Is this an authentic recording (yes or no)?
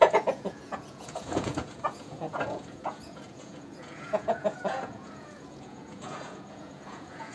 no